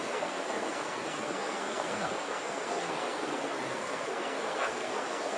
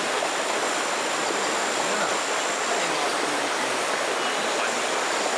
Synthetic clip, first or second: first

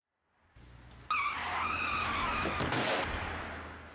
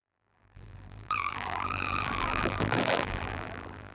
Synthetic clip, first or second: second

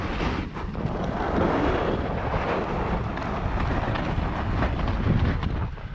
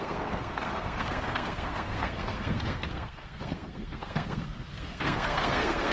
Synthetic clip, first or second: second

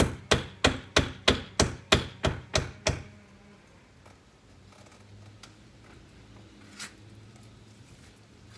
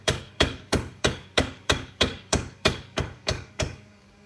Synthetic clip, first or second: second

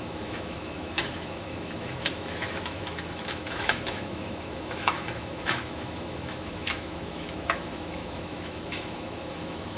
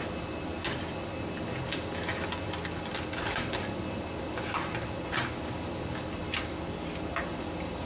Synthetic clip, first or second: first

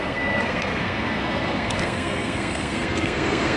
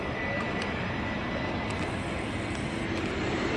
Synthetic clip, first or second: first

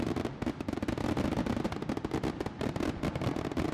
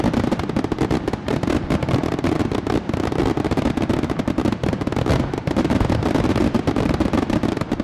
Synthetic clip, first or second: second